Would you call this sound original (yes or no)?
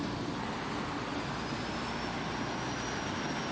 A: yes